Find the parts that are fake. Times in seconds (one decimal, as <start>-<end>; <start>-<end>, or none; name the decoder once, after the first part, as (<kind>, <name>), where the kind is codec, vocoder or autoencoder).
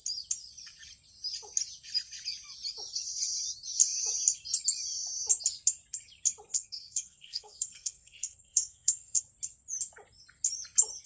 6.5-9.2 (codec, SNAC)